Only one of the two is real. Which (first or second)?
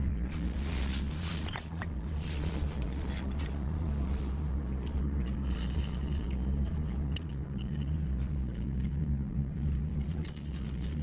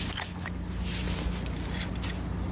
second